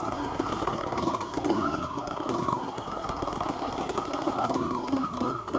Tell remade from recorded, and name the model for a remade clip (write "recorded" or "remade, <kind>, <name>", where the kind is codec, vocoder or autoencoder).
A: remade, codec, SNAC